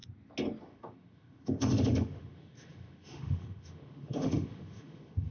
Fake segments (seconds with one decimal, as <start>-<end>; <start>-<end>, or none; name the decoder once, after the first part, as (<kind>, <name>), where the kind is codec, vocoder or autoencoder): 0.6-5.3 (autoencoder, DAC-VAE)